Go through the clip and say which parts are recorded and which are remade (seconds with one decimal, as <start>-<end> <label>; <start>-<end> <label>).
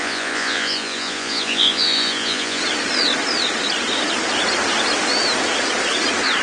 0.0-2.6 remade; 2.6-6.4 recorded